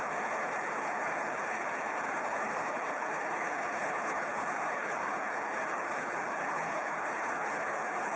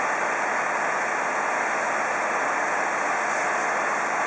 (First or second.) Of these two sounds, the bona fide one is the second